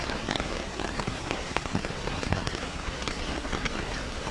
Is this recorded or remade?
remade